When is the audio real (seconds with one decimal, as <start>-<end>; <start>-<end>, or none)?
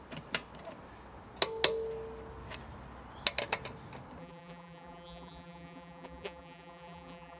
0.0-4.2